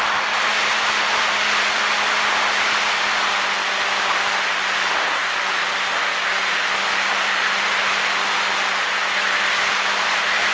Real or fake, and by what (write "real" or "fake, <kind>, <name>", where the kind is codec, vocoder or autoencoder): real